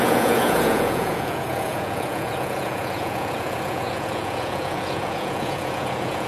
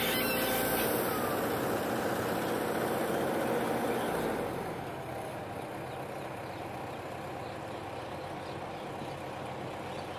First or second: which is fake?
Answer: first